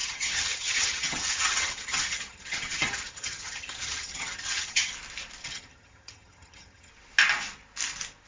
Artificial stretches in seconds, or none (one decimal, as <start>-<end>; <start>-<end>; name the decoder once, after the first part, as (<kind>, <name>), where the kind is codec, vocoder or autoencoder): 0.0-4.9 (vocoder, HiFi-GAN); 5.4-6.9